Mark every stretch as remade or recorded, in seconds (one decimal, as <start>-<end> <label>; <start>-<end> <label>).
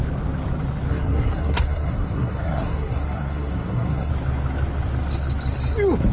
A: 0.0-0.9 recorded; 0.9-4.1 remade; 4.1-6.1 recorded